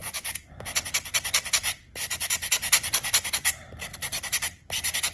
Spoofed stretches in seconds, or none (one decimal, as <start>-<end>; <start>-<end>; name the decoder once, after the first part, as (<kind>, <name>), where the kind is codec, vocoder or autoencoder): 0.0-0.6 (vocoder, Vocos)